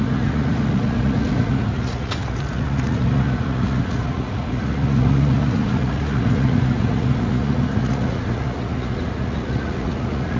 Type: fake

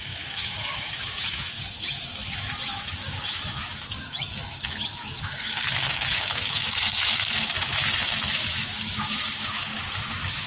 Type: fake